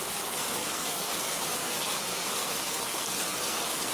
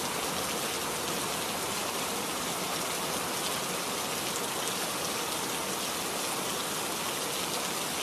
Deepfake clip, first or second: first